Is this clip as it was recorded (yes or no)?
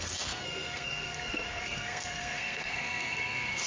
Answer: no